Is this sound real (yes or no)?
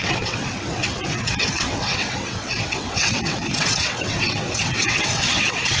no